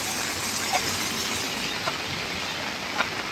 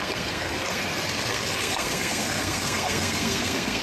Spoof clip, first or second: second